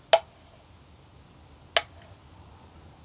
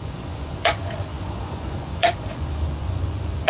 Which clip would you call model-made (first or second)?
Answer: second